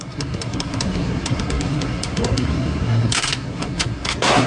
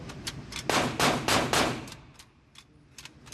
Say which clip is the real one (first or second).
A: second